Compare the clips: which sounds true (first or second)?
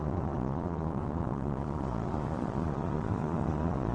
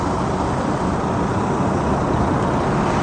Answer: second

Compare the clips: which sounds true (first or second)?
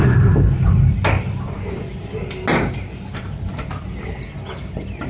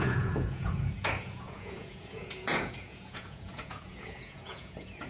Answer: first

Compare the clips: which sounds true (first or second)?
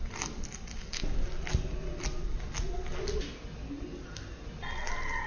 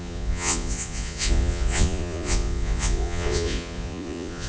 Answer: first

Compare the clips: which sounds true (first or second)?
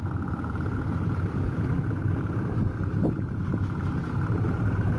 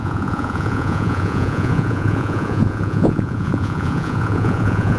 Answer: first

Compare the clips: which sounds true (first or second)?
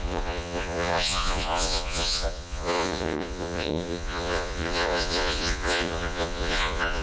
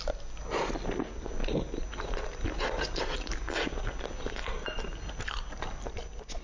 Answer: second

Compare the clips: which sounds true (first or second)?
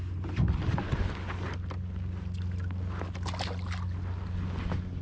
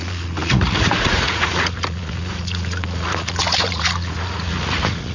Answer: first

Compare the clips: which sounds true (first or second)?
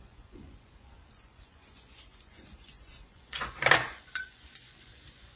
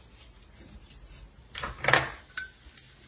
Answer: second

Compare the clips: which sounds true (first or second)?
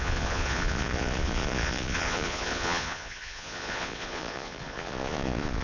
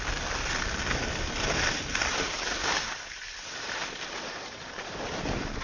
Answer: second